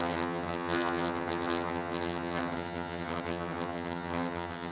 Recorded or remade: remade